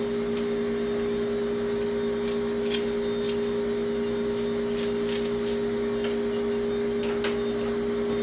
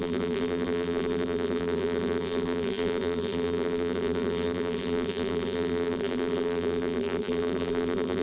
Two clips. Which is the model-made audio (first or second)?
second